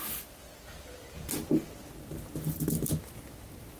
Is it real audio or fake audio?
real